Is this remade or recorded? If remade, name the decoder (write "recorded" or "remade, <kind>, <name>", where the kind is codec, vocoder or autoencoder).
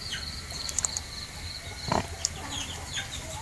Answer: remade, vocoder, BigVGAN v2